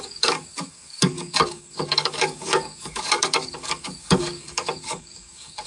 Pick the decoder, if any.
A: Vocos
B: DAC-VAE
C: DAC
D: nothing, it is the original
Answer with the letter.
C